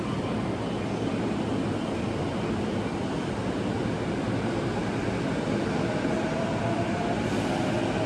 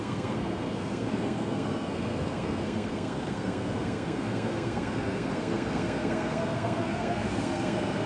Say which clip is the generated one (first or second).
second